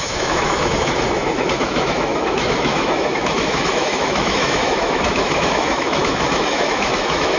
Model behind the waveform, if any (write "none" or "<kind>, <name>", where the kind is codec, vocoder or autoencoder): autoencoder, DAC-VAE